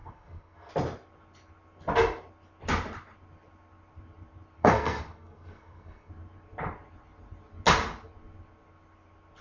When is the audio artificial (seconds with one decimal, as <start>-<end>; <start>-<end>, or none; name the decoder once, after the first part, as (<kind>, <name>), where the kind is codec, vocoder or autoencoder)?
0.0-0.7 (codec, SNAC); 4.6-6.1